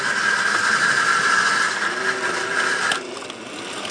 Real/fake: real